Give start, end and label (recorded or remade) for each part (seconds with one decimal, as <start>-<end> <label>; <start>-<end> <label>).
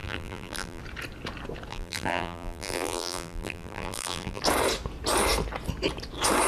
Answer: 0.0-0.8 remade; 0.8-1.7 recorded; 1.7-4.4 remade; 4.4-6.5 recorded